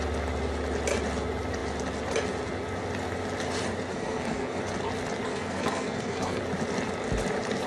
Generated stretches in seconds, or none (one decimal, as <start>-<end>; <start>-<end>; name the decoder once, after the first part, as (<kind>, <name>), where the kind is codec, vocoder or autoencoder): 3.9-4.6 (codec, SNAC); 5.3-6.4